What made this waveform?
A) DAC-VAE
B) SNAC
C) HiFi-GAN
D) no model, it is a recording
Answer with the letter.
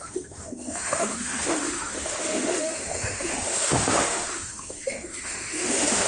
A